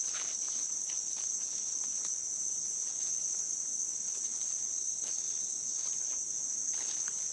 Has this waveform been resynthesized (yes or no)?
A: yes